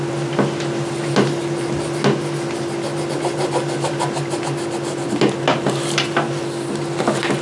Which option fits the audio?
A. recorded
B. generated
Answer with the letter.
A